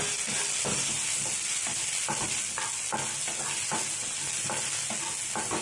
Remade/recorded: recorded